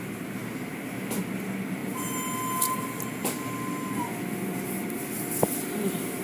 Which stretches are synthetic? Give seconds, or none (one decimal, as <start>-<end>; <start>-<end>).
none